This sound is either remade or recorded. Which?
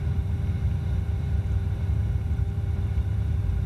remade